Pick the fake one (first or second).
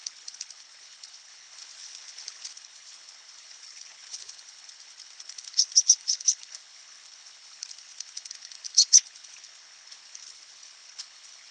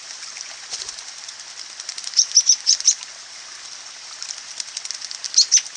first